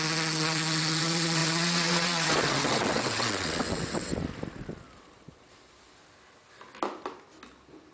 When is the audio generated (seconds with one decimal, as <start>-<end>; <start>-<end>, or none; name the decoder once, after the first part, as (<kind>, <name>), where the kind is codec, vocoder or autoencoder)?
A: 0.0-4.1 (vocoder, WaveNeXt)